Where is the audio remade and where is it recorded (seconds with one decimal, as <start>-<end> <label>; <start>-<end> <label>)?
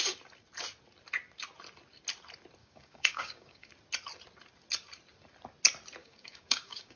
0.0-2.6 recorded; 2.6-3.7 remade; 3.7-6.0 recorded; 6.0-7.0 remade